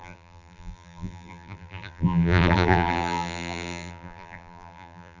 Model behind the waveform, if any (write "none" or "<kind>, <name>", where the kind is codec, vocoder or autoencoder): vocoder, BigVGAN v2